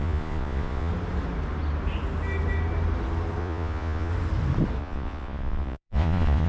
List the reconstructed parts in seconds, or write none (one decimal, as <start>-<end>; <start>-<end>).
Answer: 0.0-0.9; 3.4-4.1; 4.8-6.5